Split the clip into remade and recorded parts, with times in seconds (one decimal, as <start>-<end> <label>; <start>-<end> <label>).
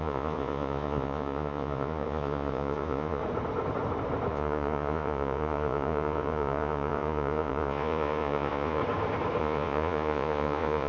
0.0-3.2 remade; 3.2-4.3 recorded; 4.3-8.8 remade; 8.8-9.4 recorded; 9.4-10.9 remade